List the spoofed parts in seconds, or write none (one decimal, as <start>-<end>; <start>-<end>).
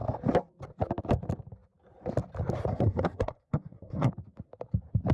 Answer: 2.7-4.1